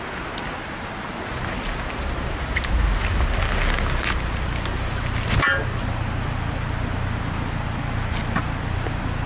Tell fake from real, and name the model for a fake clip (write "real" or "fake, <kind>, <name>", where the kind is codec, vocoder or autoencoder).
real